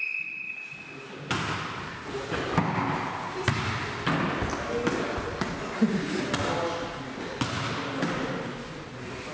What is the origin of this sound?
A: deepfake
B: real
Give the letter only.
B